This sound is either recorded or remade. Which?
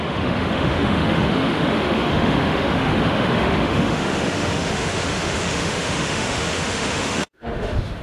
remade